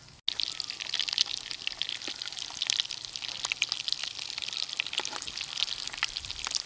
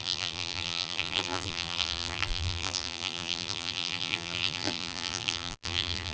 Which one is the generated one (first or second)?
second